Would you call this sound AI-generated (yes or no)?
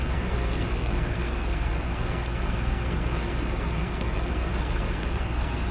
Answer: yes